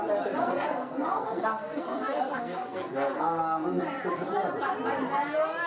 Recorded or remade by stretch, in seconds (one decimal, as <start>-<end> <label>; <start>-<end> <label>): 0.0-0.4 recorded; 0.4-3.8 remade; 3.8-5.7 recorded